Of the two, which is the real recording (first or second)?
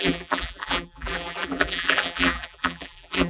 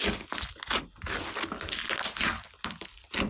second